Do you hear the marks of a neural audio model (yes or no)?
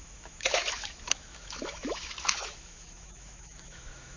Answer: yes